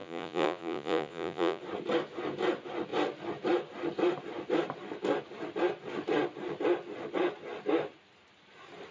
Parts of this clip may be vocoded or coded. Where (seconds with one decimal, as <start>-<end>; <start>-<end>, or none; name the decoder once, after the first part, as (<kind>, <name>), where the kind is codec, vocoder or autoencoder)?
0.0-1.6 (vocoder, Vocos)